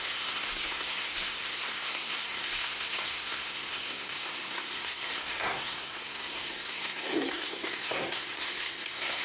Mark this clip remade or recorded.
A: remade